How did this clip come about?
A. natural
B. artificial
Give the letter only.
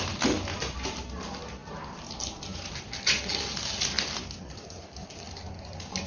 A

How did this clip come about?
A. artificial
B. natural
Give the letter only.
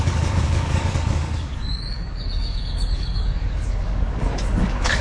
A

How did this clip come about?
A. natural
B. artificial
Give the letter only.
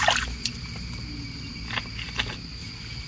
A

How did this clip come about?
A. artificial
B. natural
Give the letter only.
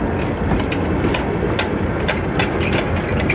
B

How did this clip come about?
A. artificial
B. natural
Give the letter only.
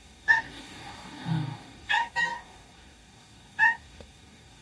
A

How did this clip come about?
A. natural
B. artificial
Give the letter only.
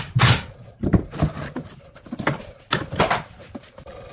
A